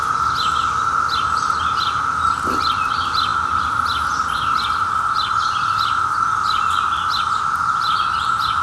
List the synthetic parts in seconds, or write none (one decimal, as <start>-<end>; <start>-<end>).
none